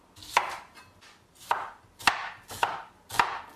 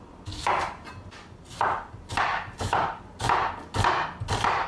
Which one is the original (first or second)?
first